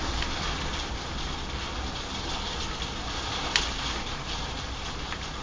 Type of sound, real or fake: real